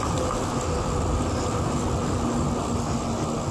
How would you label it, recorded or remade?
recorded